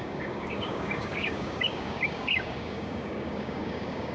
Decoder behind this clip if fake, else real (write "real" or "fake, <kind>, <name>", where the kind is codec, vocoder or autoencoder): fake, codec, DAC